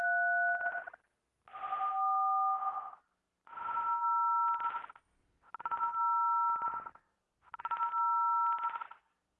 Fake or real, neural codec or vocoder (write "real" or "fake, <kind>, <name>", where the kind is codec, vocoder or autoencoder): real